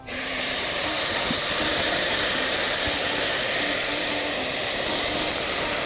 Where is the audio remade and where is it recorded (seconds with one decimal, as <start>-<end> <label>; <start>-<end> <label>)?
0.0-2.6 remade; 2.6-5.9 recorded